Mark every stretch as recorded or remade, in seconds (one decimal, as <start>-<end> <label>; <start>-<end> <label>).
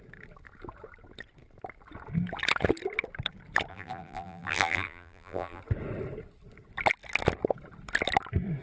0.0-3.7 recorded; 3.7-5.6 remade; 5.6-8.6 recorded